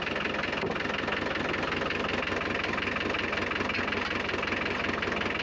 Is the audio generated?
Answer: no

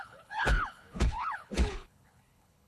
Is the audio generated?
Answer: yes